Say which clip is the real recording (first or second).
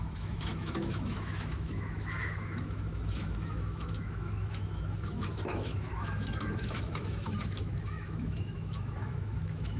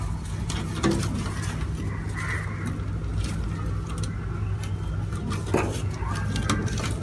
second